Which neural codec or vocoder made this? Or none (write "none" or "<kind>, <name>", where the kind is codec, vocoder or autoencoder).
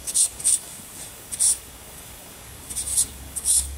codec, DAC